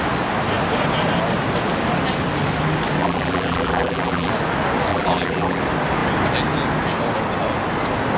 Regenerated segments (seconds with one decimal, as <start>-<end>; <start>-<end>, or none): 3.0-4.3; 4.9-5.6